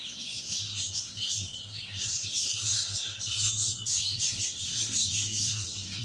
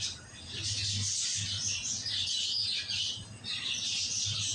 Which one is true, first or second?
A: second